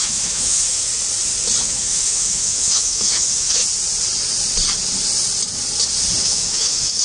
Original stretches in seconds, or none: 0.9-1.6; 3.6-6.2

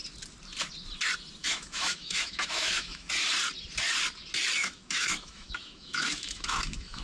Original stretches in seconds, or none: 0.0-1.4; 3.1-4.6

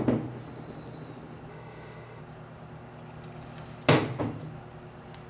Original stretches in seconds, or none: 0.0-1.5; 2.2-5.3